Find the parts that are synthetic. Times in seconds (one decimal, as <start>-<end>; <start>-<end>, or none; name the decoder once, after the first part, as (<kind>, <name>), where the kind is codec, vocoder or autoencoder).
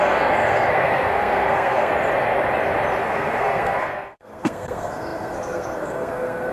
0.0-1.9 (codec, SNAC); 3.0-6.5